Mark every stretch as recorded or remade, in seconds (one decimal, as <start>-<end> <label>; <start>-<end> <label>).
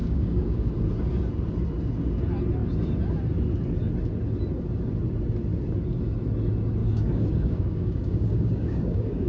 0.0-0.7 remade; 0.7-6.8 recorded; 6.8-9.3 remade